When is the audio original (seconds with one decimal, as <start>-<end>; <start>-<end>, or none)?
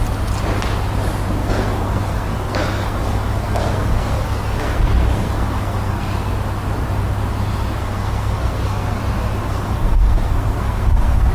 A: 0.0-1.4; 6.3-7.8; 9.0-9.4